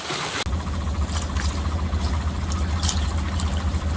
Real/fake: real